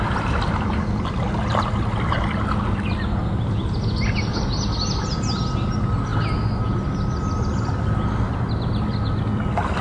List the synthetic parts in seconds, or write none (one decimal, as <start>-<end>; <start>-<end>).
none